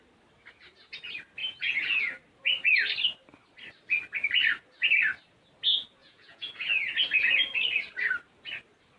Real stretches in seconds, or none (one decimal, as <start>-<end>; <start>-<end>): 0.0-1.4; 2.0-6.0; 6.8-9.0

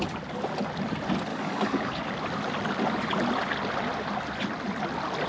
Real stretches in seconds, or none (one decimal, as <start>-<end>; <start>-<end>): 0.0-1.3; 2.0-5.3